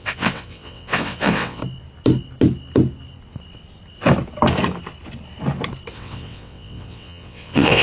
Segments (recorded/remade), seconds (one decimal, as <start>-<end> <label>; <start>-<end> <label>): 0.0-1.6 remade; 1.6-5.9 recorded; 5.9-7.8 remade